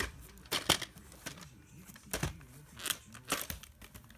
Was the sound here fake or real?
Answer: real